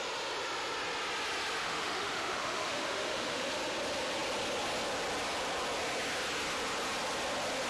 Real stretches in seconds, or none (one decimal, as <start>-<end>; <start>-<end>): 0.0-1.6; 3.5-7.7